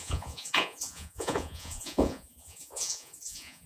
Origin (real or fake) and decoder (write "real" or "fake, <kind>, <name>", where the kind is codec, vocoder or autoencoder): fake, vocoder, Vocos